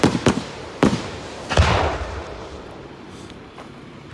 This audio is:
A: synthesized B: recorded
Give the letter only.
A